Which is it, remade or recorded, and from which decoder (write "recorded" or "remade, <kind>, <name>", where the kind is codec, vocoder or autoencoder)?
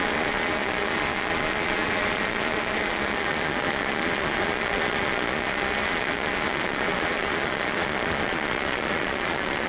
remade, vocoder, Vocos